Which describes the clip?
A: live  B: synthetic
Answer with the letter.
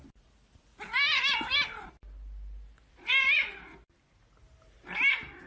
A